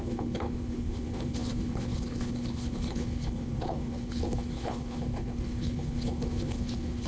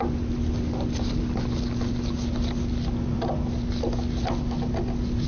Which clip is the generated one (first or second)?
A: first